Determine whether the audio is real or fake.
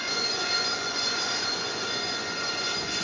fake